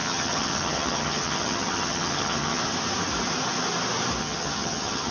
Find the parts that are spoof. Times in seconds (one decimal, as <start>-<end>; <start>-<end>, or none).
0.0-2.6; 4.2-5.1